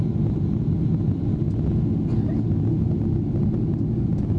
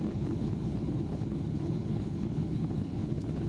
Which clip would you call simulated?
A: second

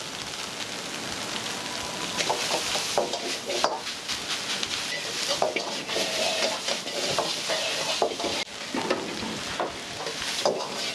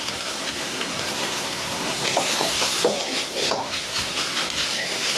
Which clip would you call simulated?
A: second